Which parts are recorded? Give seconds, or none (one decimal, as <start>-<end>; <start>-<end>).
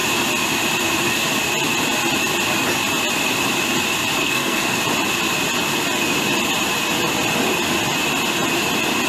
0.0-4.2; 4.8-9.1